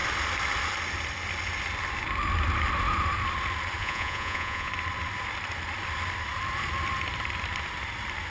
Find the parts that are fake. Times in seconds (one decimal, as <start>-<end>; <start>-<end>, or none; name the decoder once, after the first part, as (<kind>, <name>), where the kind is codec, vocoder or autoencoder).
3.8-4.7 (vocoder, Vocos)